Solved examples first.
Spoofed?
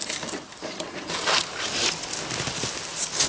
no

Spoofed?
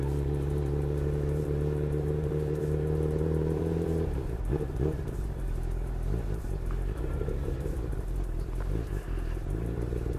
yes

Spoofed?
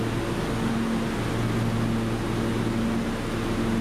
no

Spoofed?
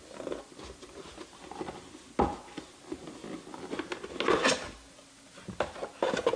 no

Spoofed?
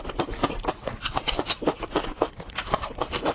no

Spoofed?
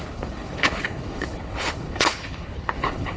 yes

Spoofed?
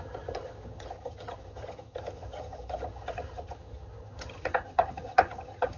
yes